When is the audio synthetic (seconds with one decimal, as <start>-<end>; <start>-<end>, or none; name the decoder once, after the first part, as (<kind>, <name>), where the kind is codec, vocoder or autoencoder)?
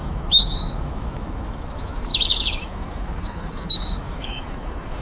0.0-5.0 (autoencoder, DAC-VAE)